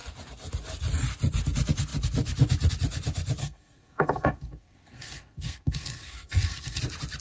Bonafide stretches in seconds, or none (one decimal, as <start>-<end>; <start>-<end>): 0.0-3.4; 6.8-7.2